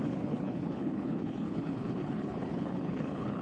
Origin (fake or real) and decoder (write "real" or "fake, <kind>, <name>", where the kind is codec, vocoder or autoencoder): fake, codec, HILCodec